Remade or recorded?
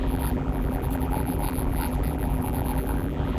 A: remade